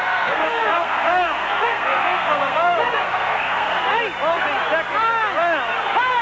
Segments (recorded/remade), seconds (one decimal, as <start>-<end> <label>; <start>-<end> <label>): 0.0-3.9 remade; 3.9-6.2 recorded